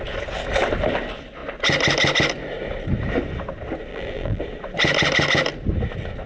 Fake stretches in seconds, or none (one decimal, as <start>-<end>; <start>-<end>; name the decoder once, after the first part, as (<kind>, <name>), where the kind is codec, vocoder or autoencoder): 3.9-4.4 (vocoder, BigVGAN v2)